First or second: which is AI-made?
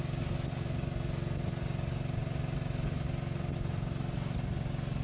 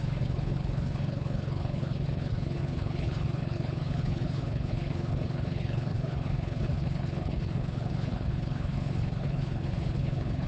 second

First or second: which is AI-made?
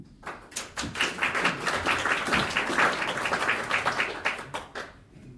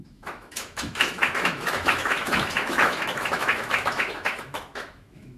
second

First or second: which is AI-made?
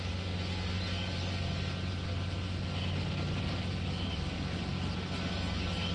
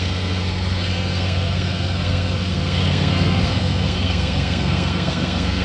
second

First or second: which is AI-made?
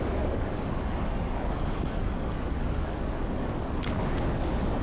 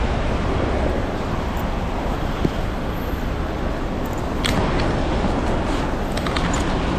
first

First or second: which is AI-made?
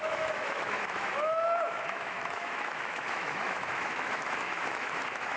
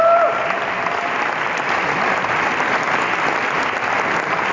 first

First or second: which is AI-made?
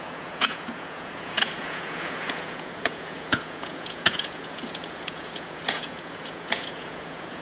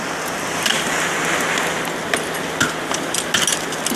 first